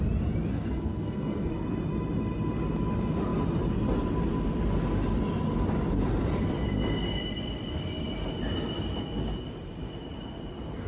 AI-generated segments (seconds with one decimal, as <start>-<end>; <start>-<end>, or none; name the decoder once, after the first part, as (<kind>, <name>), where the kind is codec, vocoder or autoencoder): 0.5-1.5 (codec, SNAC)